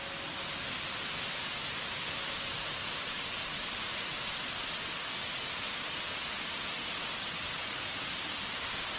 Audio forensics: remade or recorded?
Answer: recorded